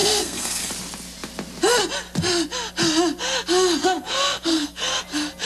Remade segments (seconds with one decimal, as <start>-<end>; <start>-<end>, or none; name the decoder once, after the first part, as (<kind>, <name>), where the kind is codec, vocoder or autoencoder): 0.0-0.7 (codec, SNAC); 3.8-5.0